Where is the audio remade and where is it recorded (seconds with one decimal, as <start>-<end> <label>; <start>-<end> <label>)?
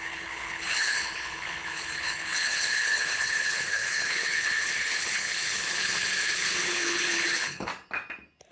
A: 0.0-7.7 remade; 7.7-8.5 recorded